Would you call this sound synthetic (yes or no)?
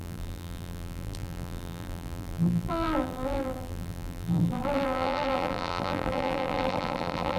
yes